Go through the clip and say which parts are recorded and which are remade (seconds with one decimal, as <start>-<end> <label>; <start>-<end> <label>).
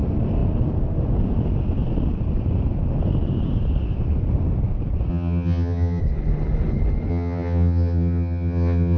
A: 0.0-5.1 recorded; 5.1-6.0 remade; 6.0-7.1 recorded; 7.1-9.0 remade